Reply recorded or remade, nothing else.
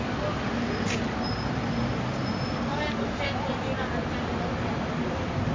recorded